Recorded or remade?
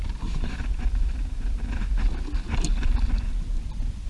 recorded